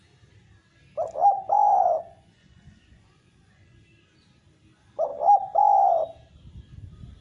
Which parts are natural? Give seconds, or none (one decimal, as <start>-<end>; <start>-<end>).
0.0-1.8; 3.8-7.2